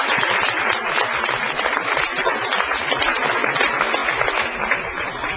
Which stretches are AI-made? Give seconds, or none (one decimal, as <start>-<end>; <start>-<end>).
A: none